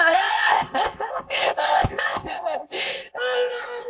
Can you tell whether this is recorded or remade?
remade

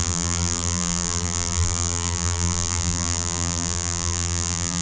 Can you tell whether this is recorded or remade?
remade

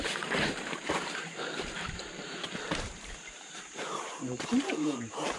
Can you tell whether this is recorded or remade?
remade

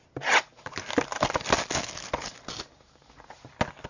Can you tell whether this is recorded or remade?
recorded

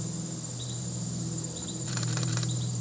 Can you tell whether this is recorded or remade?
remade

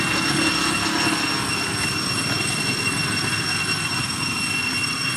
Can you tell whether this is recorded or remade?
recorded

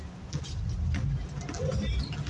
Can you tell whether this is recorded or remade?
recorded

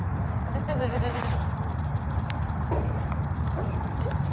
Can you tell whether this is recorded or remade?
remade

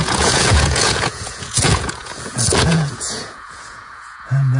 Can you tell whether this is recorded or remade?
remade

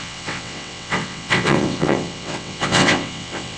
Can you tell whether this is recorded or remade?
remade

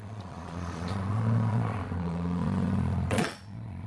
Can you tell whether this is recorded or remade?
remade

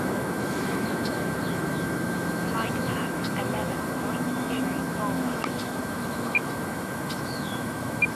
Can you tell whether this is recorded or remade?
remade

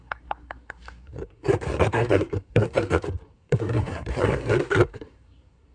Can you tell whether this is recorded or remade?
remade